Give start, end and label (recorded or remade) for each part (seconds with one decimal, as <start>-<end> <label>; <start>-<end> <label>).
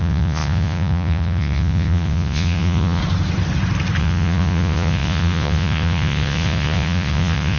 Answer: 0.0-3.0 remade; 3.0-4.0 recorded; 4.0-7.6 remade